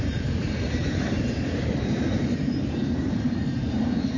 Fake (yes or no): yes